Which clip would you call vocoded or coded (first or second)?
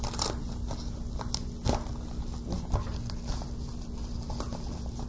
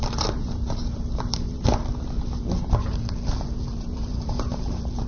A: second